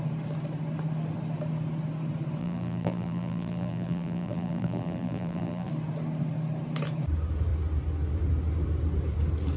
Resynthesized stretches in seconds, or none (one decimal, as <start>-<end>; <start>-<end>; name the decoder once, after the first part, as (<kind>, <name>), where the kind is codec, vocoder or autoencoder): 2.4-5.7 (vocoder, BigVGAN v2)